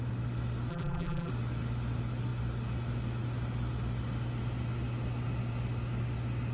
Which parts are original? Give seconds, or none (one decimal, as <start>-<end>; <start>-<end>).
0.0-0.7; 1.3-6.5